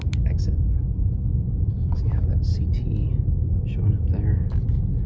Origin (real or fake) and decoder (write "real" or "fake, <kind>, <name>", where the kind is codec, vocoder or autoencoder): real